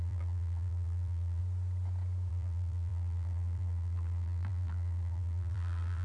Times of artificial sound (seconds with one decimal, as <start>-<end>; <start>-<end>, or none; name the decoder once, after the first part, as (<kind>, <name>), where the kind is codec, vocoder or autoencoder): 0.0-1.4 (vocoder, BigVGAN v2); 2.3-6.0